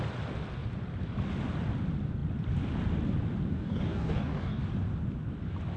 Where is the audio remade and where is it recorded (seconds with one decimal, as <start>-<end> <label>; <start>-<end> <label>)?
0.0-3.5 recorded; 3.5-4.6 remade; 4.6-5.8 recorded